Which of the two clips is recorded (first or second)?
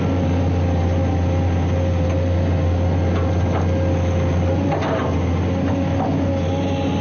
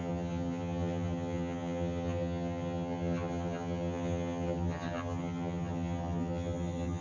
first